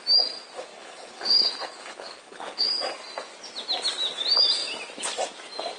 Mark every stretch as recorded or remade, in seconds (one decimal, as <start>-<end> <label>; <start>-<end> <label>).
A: 0.0-0.7 recorded; 0.7-2.7 remade; 2.7-5.8 recorded